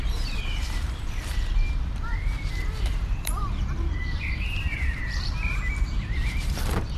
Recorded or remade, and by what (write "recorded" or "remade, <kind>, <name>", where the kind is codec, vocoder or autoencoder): remade, vocoder, BigVGAN v2